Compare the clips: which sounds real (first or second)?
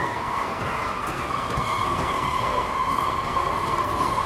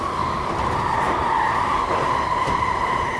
second